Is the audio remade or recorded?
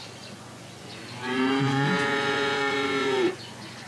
remade